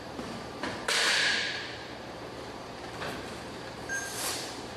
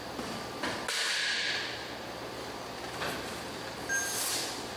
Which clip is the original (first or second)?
second